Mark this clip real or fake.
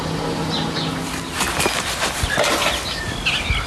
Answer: real